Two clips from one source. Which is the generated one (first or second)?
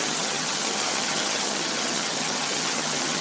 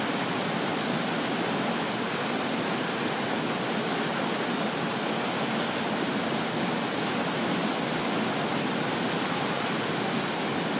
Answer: first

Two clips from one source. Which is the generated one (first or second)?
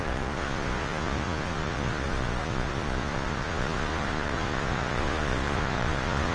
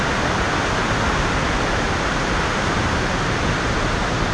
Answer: first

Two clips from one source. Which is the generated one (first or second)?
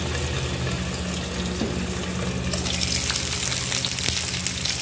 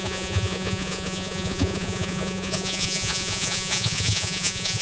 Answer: second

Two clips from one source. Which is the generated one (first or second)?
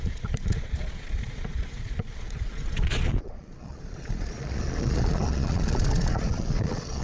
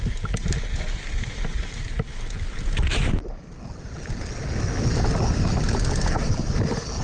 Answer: first